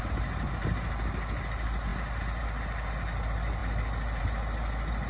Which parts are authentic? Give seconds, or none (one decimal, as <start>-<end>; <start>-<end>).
0.0-5.1